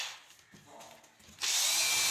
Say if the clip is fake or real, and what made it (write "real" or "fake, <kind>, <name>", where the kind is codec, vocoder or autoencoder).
real